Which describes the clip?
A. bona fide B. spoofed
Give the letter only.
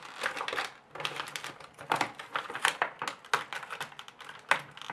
A